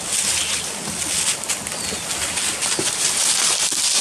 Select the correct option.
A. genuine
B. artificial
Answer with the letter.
A